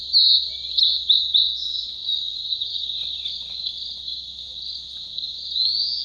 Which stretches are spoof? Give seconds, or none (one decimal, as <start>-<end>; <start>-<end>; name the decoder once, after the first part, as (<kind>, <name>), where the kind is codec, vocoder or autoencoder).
2.0-2.8 (vocoder, Vocos)